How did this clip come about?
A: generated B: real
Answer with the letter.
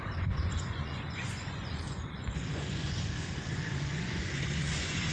A